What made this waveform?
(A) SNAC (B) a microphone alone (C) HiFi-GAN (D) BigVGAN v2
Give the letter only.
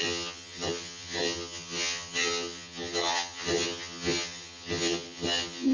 C